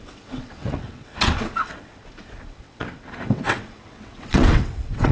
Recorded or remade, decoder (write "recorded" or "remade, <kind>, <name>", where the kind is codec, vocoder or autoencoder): remade, vocoder, WaveNeXt